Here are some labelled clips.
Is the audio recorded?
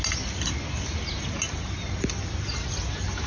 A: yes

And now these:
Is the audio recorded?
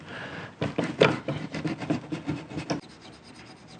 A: yes